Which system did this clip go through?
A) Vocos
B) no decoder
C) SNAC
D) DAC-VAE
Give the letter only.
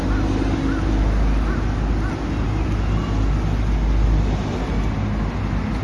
B